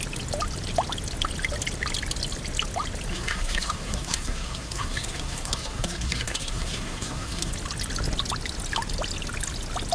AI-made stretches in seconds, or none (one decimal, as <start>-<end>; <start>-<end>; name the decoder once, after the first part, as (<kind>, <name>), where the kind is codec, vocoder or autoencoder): 3.1-7.5 (codec, SNAC)